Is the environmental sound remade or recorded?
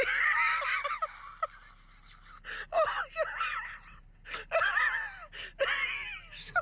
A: recorded